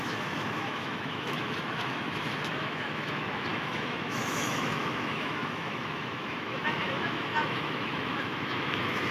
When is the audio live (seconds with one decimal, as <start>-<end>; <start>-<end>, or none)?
none